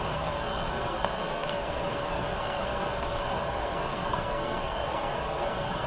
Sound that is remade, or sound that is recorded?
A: remade